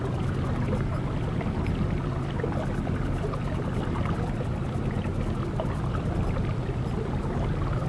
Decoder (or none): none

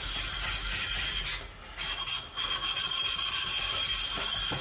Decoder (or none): none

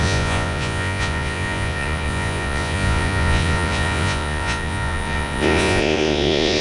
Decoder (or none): vocoder, Vocos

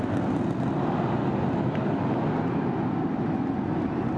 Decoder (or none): none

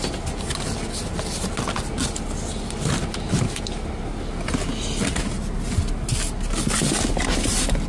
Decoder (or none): none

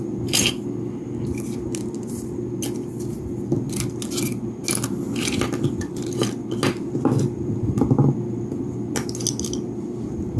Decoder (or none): none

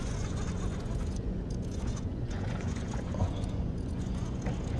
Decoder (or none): vocoder, Vocos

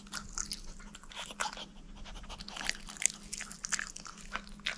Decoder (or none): none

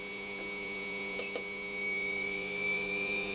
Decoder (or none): vocoder, Vocos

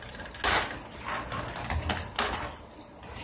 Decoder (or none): none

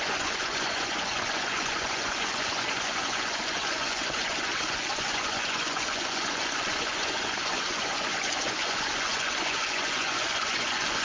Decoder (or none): vocoder, Vocos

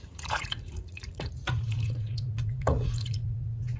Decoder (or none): vocoder, Vocos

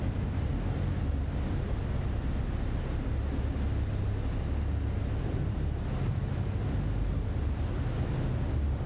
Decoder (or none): none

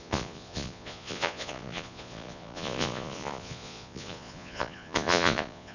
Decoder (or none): vocoder, Vocos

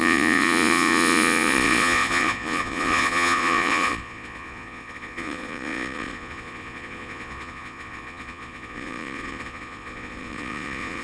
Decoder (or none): vocoder, Vocos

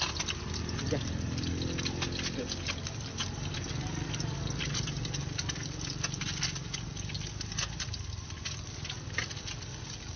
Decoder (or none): none